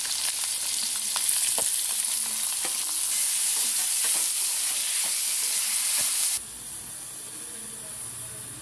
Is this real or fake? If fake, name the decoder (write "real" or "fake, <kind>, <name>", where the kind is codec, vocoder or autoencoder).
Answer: real